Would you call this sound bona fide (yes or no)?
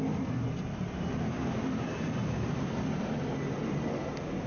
yes